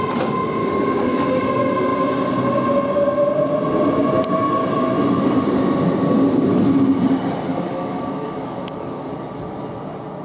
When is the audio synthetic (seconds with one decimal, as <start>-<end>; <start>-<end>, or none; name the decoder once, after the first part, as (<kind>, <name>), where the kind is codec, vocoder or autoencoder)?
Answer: 0.6-1.4 (codec, DAC); 7.5-9.1